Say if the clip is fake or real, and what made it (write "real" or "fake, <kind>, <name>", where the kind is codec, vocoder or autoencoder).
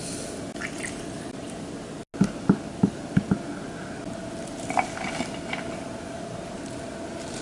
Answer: real